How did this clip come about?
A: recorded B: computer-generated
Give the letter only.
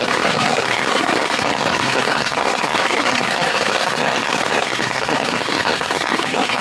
B